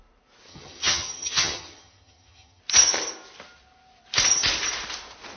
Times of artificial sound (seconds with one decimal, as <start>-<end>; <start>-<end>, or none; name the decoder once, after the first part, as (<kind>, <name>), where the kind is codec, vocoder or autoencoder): 0.5-2.6 (vocoder, HiFi-GAN)